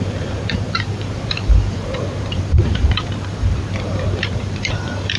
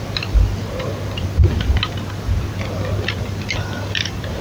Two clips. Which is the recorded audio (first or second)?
second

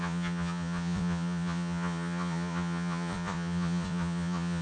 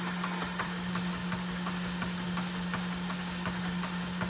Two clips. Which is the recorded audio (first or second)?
second